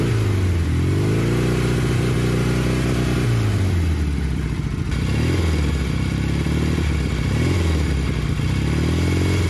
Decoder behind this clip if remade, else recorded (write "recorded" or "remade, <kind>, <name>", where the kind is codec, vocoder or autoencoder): recorded